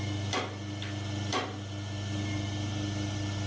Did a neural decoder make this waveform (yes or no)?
no